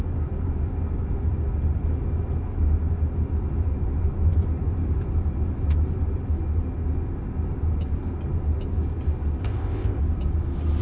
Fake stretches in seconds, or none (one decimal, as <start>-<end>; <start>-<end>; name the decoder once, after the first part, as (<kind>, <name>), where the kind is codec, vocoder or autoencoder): 9.4-10.0 (codec, ZipCodec)